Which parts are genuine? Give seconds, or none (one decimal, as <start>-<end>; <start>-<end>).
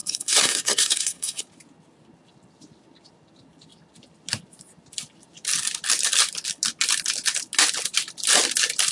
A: 1.4-8.9